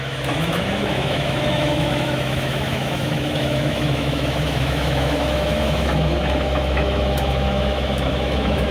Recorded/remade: remade